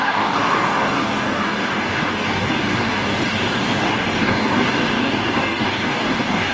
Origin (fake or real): fake